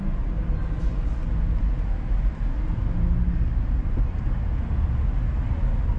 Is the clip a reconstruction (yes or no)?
no